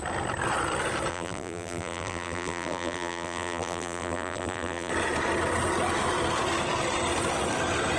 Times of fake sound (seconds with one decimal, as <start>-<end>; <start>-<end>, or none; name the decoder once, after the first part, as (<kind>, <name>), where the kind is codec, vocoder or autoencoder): 1.1-4.9 (vocoder, BigVGAN v2)